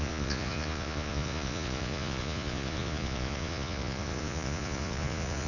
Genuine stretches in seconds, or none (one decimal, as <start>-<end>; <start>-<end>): none